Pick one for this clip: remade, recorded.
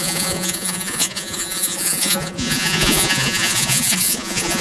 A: remade